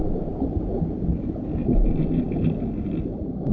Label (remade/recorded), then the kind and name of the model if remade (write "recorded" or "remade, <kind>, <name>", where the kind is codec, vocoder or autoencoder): recorded